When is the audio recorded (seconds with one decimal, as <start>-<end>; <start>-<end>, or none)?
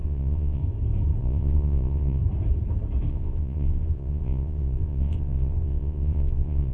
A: 0.6-1.2; 2.2-3.1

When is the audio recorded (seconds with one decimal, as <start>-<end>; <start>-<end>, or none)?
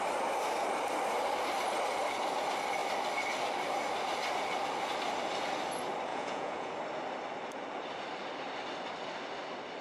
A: 0.0-6.1; 6.7-9.8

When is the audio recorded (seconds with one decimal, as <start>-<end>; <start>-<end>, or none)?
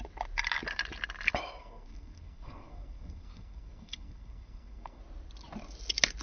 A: 0.0-1.6; 5.0-6.2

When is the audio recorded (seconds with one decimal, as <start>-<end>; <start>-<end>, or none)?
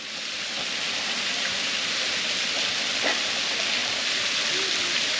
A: 0.0-5.2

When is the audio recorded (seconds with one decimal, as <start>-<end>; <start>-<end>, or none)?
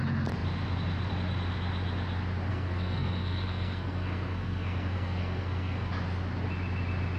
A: 0.0-2.5; 5.9-7.2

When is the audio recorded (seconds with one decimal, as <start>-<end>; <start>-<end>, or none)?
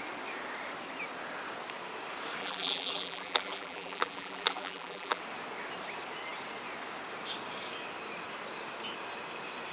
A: 0.0-2.4; 5.2-9.7